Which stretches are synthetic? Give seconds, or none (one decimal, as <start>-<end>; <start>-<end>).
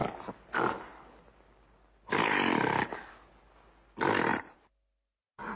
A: 4.3-5.6